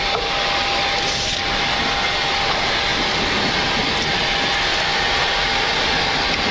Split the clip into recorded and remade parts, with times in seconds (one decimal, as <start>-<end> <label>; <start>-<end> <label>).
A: 0.0-6.5 recorded